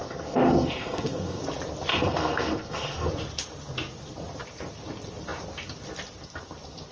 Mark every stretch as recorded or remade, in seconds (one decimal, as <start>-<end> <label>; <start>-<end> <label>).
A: 0.0-1.4 remade; 1.4-1.9 recorded; 1.9-3.1 remade; 3.1-6.9 recorded